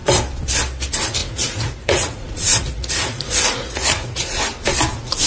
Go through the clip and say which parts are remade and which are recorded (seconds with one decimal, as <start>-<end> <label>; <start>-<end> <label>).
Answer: 0.0-1.2 recorded; 1.2-4.4 remade; 4.4-5.3 recorded